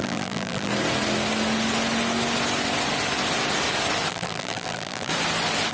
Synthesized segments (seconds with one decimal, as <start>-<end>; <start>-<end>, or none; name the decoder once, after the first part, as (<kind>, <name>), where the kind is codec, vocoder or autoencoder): 0.0-0.7 (vocoder, BigVGAN v2); 4.1-5.1